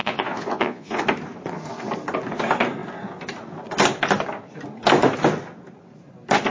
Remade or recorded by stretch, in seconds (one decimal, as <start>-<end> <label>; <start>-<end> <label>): 0.0-1.0 remade; 1.0-6.5 recorded